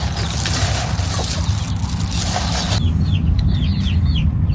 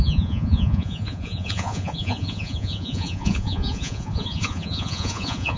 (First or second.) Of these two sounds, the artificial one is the second